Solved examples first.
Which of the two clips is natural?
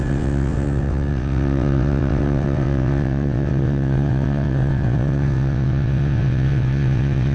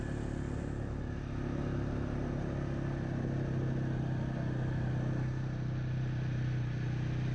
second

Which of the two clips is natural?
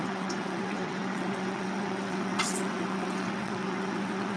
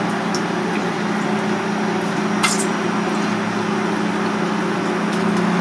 second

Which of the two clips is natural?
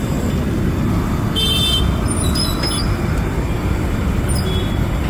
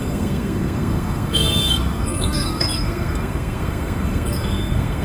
first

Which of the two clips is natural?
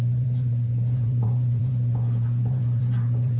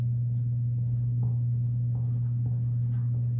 second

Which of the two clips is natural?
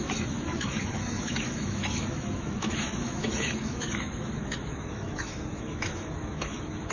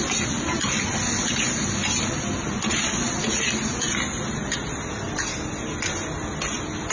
second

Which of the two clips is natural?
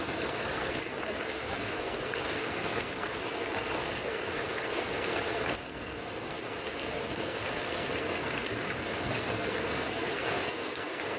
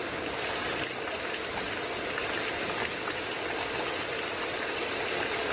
second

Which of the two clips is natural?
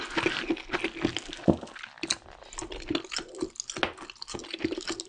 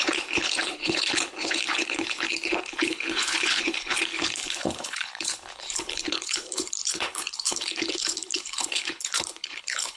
first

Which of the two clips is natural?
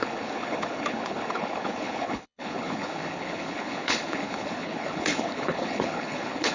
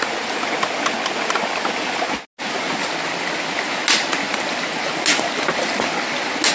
second